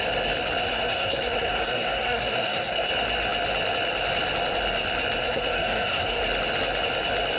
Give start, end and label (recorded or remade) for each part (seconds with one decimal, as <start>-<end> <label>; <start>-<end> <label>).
0.0-0.6 recorded; 0.6-2.9 remade; 2.9-5.2 recorded; 5.2-6.2 remade; 6.2-7.4 recorded